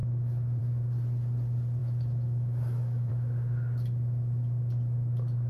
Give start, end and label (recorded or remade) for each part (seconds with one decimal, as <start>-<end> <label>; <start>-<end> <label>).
0.0-0.6 remade; 0.6-1.8 recorded; 1.8-3.1 remade; 3.1-5.5 recorded